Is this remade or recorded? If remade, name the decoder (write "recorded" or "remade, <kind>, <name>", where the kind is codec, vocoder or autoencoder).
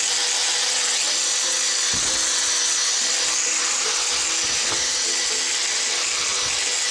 recorded